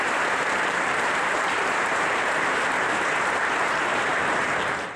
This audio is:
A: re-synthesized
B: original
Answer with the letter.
A